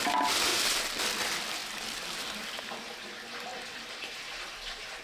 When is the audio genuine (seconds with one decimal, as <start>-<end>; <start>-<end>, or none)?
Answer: 0.0-0.5; 1.0-1.6; 2.2-3.5